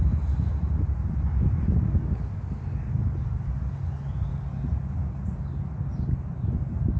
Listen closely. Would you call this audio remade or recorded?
recorded